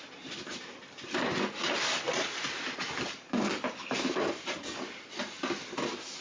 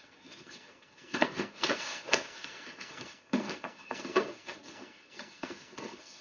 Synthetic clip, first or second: second